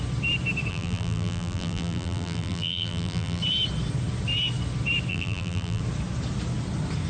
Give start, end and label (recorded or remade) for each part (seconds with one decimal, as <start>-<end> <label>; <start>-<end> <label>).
0.0-0.7 recorded; 0.7-3.4 remade; 3.4-5.1 recorded; 5.1-5.8 remade; 5.8-7.1 recorded